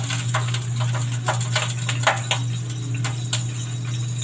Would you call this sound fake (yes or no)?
no